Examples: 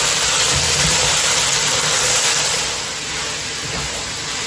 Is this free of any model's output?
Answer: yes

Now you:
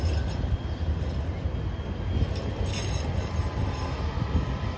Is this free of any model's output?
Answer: yes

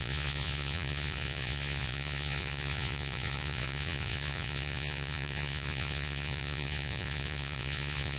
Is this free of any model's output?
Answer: no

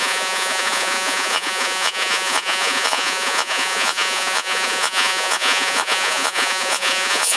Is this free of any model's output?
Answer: no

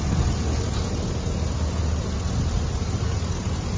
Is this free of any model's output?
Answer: yes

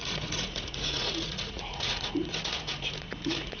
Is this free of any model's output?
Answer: no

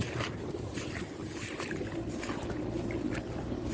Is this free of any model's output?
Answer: yes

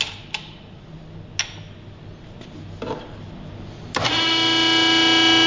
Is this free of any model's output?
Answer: yes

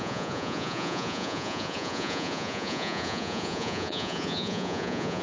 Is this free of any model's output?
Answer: no